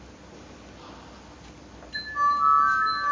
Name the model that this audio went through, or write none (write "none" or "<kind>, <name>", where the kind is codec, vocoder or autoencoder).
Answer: none